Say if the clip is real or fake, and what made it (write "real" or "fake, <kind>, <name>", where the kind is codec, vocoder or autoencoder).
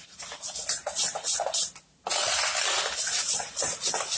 real